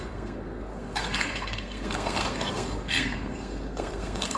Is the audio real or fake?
fake